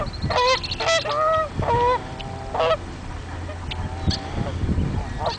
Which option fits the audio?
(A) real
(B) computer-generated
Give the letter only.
A